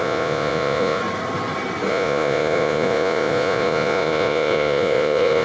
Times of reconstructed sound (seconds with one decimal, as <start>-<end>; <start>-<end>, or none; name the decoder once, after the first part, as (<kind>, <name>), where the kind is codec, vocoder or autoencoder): 0.0-1.0 (vocoder, Vocos); 1.9-5.4